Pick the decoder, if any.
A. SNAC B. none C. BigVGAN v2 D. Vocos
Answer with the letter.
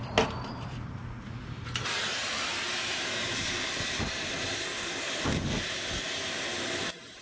C